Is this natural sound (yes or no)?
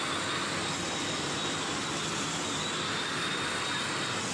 yes